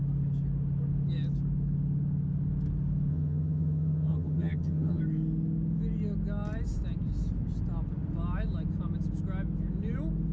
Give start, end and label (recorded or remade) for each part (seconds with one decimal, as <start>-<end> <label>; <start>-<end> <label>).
0.0-3.1 recorded; 3.1-5.0 remade; 5.0-10.3 recorded